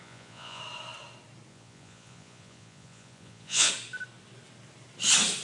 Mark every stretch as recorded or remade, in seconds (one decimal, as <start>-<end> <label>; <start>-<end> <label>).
0.0-0.6 remade; 0.6-1.5 recorded; 1.5-3.7 remade; 3.7-5.4 recorded

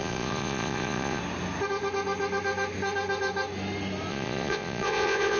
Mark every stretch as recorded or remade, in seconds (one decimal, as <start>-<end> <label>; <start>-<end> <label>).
0.0-1.2 remade; 1.2-4.1 recorded; 4.1-5.4 remade

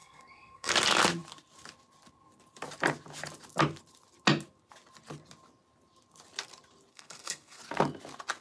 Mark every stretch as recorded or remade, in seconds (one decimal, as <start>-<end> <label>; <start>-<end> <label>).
0.0-0.7 remade; 0.7-6.9 recorded; 6.9-7.6 remade; 7.6-8.4 recorded

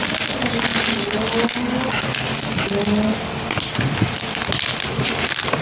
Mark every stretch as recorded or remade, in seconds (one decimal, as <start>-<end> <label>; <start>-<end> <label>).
0.0-5.6 recorded

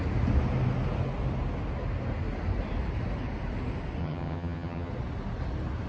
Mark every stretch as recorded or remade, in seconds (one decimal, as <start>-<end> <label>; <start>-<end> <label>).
0.0-4.0 recorded; 4.0-4.9 remade; 4.9-5.9 recorded

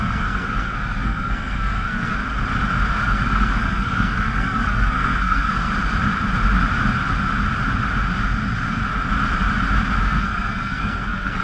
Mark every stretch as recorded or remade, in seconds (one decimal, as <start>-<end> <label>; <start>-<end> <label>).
0.0-2.2 remade; 2.2-2.9 recorded; 2.9-5.7 remade; 5.7-10.0 recorded; 10.0-11.4 remade

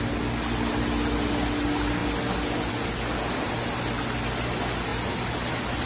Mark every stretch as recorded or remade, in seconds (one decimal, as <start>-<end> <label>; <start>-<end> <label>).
0.0-5.9 recorded

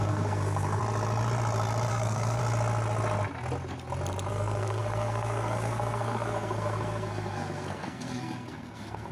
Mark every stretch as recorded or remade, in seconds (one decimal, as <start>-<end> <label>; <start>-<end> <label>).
0.0-0.8 remade; 0.8-1.9 recorded; 1.9-2.4 remade; 2.4-4.3 recorded; 4.3-9.1 remade